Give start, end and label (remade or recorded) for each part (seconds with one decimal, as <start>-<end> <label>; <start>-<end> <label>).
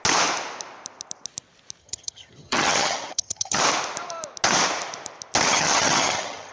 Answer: 0.0-1.8 recorded; 1.8-3.6 remade; 3.6-5.5 recorded; 5.5-6.5 remade